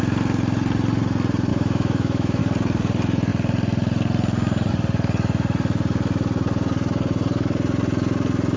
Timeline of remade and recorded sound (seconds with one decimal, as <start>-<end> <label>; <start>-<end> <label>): 0.0-1.5 recorded; 1.5-2.4 remade; 2.4-8.6 recorded